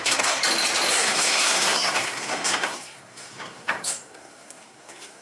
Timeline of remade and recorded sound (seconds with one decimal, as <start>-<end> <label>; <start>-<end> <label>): 0.0-0.4 remade; 0.4-0.9 recorded; 0.9-5.2 remade